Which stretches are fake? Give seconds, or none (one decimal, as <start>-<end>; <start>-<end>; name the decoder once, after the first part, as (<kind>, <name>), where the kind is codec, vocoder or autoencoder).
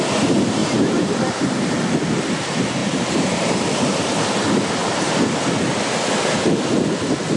0.6-1.7 (vocoder, BigVGAN v2); 2.8-4.1; 4.8-5.3